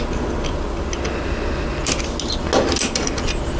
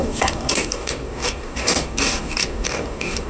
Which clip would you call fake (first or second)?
second